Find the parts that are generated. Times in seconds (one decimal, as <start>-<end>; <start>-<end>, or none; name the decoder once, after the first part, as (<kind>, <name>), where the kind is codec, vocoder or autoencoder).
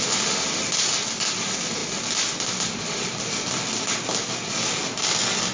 none